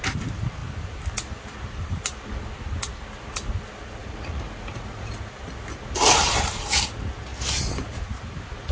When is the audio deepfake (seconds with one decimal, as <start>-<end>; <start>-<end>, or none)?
4.0-5.1